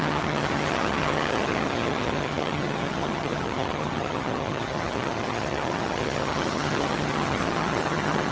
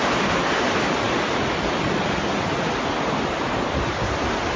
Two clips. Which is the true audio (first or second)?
second